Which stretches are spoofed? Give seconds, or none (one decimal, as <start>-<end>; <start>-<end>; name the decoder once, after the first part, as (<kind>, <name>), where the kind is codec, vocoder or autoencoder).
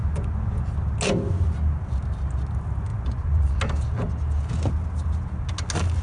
0.0-0.7 (vocoder, Vocos); 2.9-3.6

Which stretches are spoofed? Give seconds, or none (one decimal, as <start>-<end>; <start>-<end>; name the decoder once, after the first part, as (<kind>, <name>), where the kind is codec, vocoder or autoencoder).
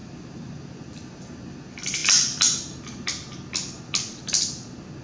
none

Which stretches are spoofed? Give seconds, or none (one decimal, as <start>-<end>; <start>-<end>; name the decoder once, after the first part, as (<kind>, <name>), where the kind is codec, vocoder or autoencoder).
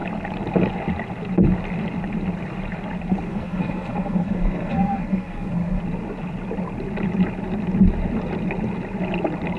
3.3-5.8 (codec, SNAC)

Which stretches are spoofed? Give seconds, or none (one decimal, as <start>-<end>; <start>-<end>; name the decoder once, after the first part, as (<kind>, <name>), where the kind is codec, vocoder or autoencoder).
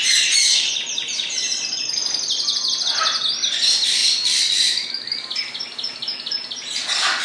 none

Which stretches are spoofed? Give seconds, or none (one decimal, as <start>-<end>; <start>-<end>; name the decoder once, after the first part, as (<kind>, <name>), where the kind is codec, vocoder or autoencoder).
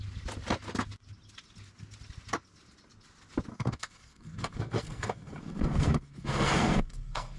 3.5-7.4 (codec, SNAC)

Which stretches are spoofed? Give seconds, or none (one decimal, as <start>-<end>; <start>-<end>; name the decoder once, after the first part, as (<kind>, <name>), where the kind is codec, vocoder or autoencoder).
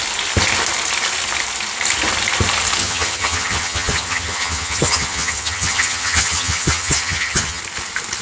2.8-7.6 (vocoder, HiFi-GAN)